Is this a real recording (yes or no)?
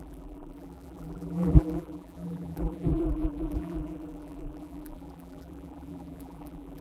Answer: no